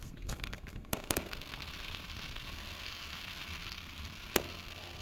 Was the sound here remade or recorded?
remade